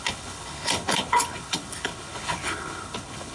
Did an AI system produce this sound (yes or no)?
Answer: yes